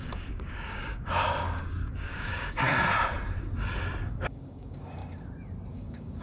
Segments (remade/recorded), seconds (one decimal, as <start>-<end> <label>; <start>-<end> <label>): 0.0-2.6 remade; 2.6-4.0 recorded; 4.0-5.0 remade; 5.0-5.7 recorded; 5.7-6.2 remade